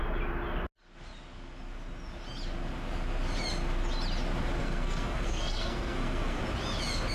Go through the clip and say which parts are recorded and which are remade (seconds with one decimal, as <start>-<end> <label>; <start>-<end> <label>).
0.0-4.6 recorded; 4.6-6.4 remade; 6.4-7.1 recorded